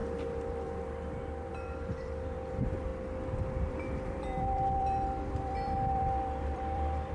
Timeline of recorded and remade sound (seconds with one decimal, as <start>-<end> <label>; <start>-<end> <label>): 0.0-2.9 remade; 2.9-3.7 recorded; 3.7-7.1 remade